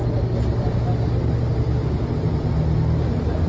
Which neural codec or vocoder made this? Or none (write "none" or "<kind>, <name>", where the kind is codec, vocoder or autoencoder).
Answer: none